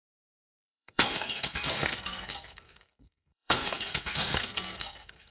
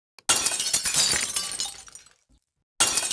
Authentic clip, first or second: second